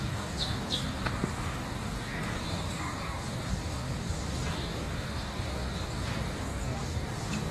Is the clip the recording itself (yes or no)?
no